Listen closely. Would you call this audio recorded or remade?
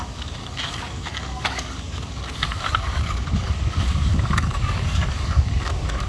remade